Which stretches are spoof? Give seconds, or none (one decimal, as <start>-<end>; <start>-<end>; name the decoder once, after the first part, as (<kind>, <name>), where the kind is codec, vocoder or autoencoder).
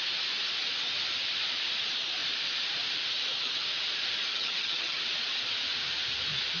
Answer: 4.3-5.0 (vocoder, HiFi-GAN)